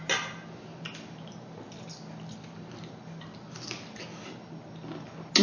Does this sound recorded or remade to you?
recorded